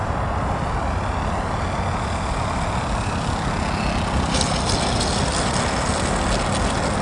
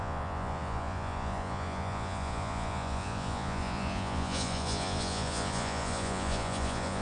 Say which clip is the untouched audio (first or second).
first